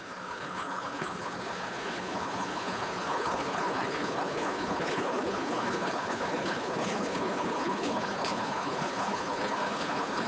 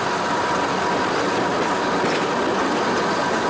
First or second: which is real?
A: second